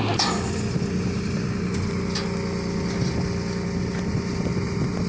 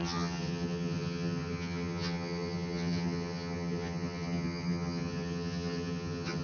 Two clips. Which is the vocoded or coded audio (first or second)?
second